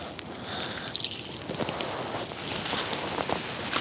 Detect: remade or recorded recorded